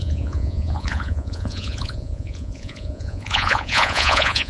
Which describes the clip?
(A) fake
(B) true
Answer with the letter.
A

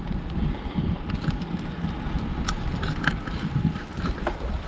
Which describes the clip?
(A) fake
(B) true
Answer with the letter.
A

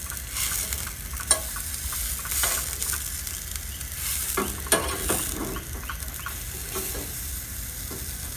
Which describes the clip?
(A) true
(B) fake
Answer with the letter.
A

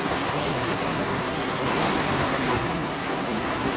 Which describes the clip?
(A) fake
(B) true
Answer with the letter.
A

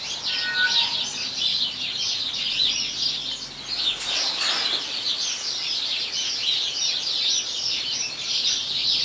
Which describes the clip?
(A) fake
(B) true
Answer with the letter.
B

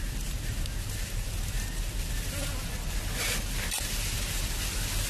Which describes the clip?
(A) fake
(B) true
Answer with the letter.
B